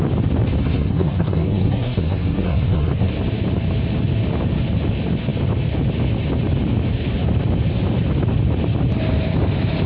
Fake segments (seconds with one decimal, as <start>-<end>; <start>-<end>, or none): 0.6-3.1